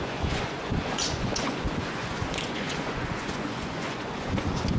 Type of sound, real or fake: fake